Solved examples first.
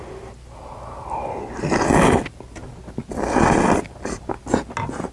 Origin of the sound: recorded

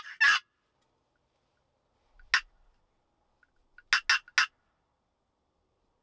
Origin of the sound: recorded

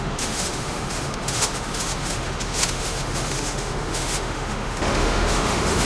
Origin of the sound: remade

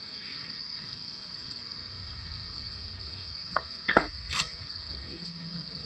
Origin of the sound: remade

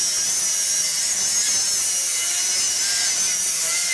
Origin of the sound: recorded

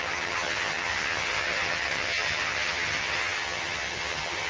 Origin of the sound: remade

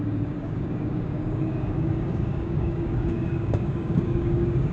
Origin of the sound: remade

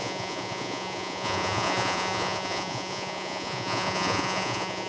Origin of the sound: remade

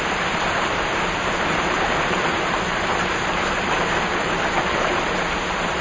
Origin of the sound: remade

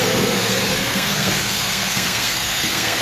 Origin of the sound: remade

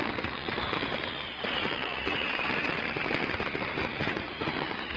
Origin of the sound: remade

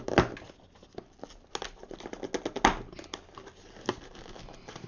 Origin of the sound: recorded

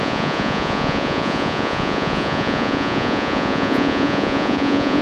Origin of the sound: remade